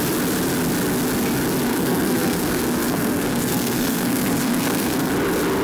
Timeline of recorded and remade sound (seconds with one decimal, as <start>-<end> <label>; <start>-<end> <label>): 0.0-1.7 recorded; 1.7-5.1 remade; 5.1-5.6 recorded